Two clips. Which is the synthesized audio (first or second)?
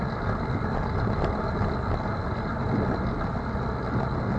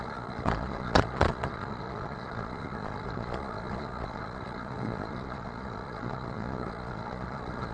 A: second